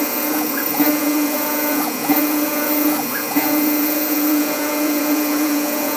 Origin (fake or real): fake